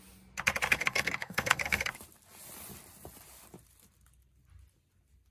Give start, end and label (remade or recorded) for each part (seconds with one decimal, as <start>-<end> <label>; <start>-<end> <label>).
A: 0.0-0.7 recorded; 0.7-1.9 remade; 1.9-5.3 recorded